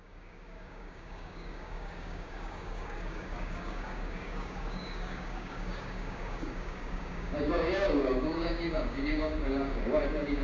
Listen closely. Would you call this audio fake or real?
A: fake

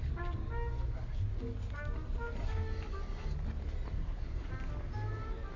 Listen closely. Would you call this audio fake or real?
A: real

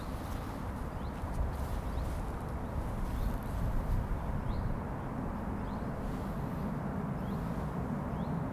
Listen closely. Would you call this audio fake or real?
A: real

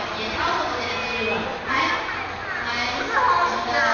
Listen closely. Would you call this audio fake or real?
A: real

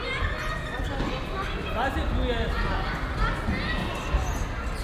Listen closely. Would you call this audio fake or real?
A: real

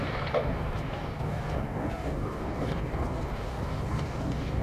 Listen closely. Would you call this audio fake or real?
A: fake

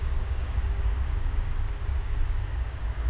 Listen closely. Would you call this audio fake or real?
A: fake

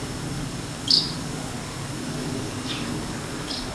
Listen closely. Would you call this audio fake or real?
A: fake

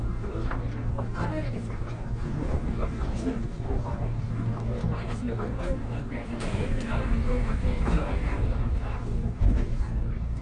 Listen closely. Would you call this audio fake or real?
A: fake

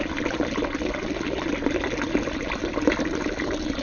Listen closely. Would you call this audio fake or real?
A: real